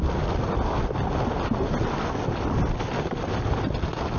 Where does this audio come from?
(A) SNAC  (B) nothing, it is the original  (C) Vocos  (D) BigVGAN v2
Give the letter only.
B